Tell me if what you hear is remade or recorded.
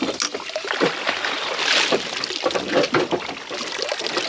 recorded